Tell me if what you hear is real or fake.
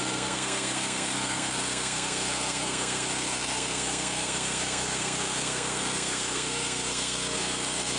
fake